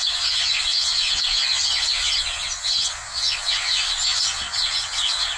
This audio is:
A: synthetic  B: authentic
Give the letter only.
A